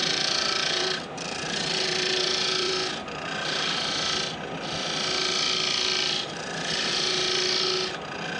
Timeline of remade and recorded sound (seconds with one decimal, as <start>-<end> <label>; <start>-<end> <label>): 0.0-2.7 remade; 2.7-8.4 recorded

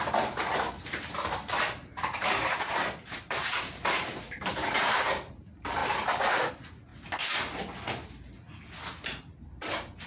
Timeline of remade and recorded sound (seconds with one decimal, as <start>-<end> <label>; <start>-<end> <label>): 0.0-6.9 remade; 6.9-9.2 recorded; 9.2-10.1 remade

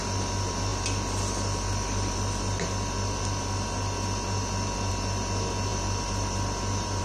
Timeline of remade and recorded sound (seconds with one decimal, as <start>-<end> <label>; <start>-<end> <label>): 0.0-7.0 recorded